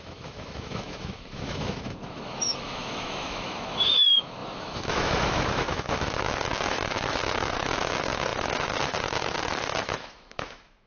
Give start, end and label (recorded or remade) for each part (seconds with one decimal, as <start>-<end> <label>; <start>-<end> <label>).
0.0-10.9 remade